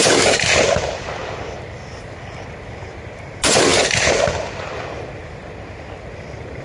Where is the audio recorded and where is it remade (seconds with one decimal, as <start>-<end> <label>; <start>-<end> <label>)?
0.0-6.6 recorded